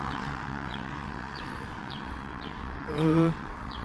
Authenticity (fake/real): fake